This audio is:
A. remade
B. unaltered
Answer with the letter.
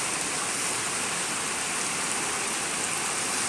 B